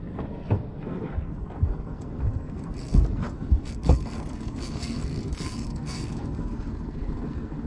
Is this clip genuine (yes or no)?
no